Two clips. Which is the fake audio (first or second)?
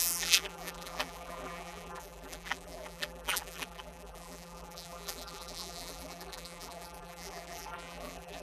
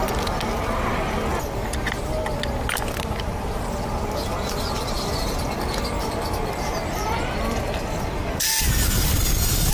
first